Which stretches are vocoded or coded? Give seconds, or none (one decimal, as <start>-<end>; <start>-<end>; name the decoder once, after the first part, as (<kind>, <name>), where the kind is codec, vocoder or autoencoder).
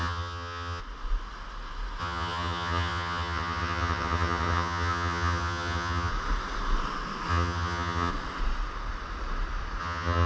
0.0-0.8 (vocoder, HiFi-GAN); 2.0-6.1; 7.3-8.1; 9.8-10.3